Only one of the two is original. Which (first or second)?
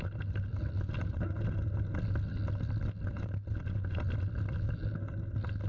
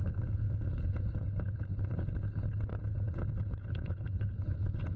first